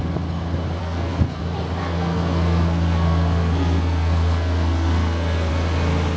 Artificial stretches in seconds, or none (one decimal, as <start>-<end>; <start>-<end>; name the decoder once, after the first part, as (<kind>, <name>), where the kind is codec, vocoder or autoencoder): 0.8-1.4 (codec, SNAC); 1.8-5.5